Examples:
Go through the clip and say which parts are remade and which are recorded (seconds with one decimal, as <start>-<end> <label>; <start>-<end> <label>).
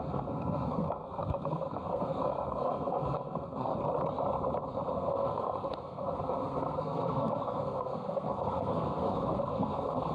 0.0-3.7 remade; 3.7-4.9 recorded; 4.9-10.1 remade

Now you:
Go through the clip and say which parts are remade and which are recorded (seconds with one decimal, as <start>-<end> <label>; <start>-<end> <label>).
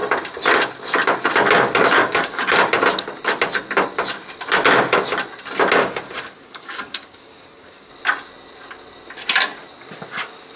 0.0-2.0 recorded; 2.0-2.5 remade; 2.5-5.8 recorded; 5.8-7.9 remade; 7.9-10.6 recorded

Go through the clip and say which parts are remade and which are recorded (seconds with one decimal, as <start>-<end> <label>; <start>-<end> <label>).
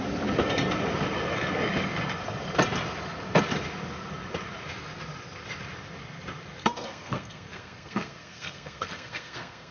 0.0-6.6 recorded; 6.6-9.7 remade